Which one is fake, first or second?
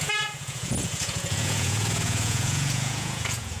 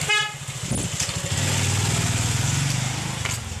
first